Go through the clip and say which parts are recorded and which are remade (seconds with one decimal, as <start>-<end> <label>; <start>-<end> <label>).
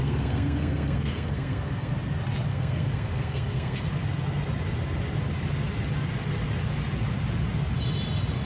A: 0.0-1.9 remade; 1.9-2.5 recorded; 2.5-3.9 remade; 3.9-8.5 recorded